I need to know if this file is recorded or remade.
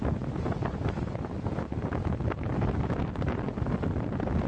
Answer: recorded